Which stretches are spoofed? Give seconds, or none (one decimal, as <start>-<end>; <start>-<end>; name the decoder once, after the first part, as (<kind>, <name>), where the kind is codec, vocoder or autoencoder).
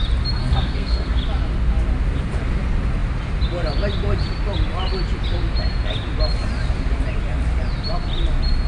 0.4-1.2 (codec, SNAC)